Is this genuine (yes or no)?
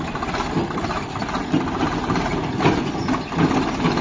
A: yes